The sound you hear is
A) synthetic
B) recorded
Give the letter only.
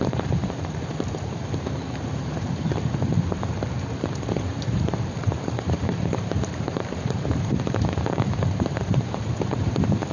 A